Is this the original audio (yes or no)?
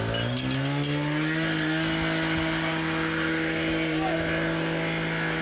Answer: yes